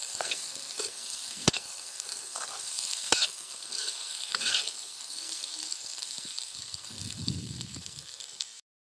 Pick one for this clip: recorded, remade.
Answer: remade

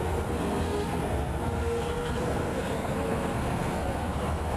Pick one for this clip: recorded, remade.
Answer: remade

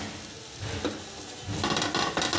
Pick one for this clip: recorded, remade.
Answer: recorded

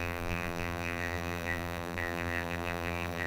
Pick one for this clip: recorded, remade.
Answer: remade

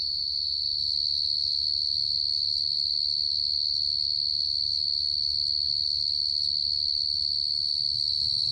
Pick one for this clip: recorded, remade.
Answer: remade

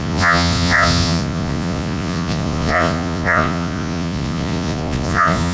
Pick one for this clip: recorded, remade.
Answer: remade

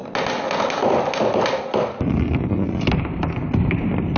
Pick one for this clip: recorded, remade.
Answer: recorded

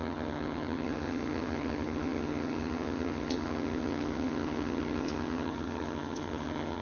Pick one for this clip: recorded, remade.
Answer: remade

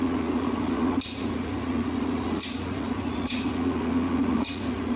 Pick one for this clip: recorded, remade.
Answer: remade